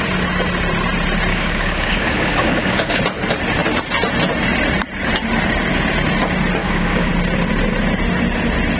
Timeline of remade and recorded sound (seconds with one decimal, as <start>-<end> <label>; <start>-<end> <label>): 0.0-1.3 recorded; 1.3-3.0 remade; 3.0-6.6 recorded; 6.6-7.1 remade; 7.1-8.8 recorded